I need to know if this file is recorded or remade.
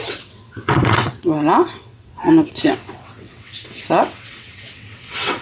remade